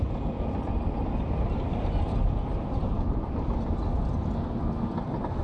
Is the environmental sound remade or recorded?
recorded